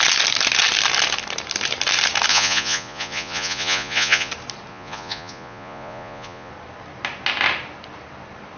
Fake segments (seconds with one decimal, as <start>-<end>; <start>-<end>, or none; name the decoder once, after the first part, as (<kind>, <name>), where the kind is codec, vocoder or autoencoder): 2.3-4.3 (vocoder, Vocos); 4.7-6.5